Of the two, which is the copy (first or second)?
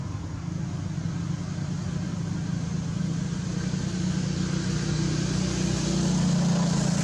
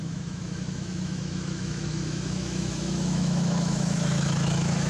second